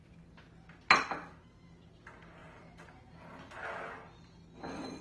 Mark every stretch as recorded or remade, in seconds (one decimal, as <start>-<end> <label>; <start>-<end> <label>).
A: 0.0-5.0 recorded

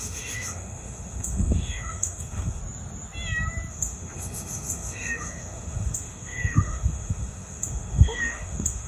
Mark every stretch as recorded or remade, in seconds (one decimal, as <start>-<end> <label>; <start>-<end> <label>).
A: 0.0-2.6 remade; 2.6-3.7 recorded; 3.7-8.9 remade

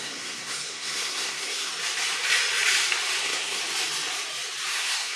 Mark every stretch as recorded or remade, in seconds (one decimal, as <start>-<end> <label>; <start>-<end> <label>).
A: 0.0-1.7 remade; 1.7-3.2 recorded; 3.2-3.6 remade; 3.6-4.7 recorded; 4.7-5.2 remade

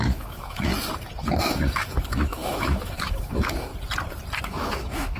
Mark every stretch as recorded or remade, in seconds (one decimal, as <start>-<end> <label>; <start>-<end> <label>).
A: 0.0-0.7 remade; 0.7-1.2 recorded; 1.2-3.7 remade; 3.7-4.4 recorded; 4.4-5.2 remade

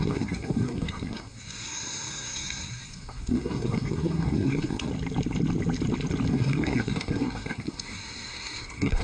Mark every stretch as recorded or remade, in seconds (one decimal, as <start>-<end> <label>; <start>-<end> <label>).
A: 0.0-4.9 remade; 4.9-6.3 recorded; 6.3-9.0 remade

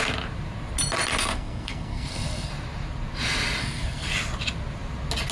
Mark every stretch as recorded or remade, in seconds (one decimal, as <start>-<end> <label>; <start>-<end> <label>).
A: 0.0-1.2 recorded; 1.2-2.5 remade; 2.5-3.6 recorded; 3.6-4.1 remade; 4.1-5.3 recorded

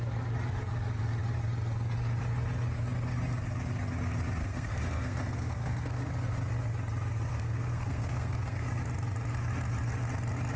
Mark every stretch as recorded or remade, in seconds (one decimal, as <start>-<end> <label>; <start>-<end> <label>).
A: 0.0-4.4 recorded; 4.4-6.1 remade; 6.1-7.3 recorded; 7.3-8.6 remade; 8.6-10.6 recorded